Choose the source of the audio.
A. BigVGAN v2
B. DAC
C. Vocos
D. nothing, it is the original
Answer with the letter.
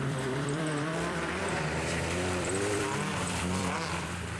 A